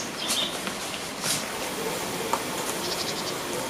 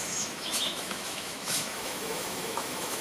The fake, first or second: second